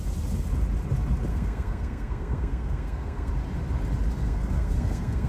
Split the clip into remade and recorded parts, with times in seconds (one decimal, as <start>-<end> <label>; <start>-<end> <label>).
0.0-1.3 recorded; 1.3-3.3 remade; 3.3-4.2 recorded; 4.2-5.3 remade